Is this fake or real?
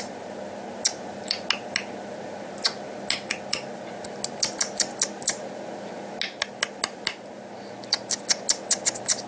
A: real